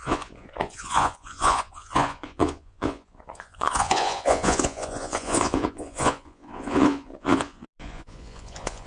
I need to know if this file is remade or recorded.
remade